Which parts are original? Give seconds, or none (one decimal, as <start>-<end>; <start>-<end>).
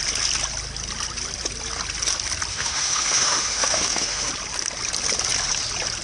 0.0-2.5; 4.3-6.0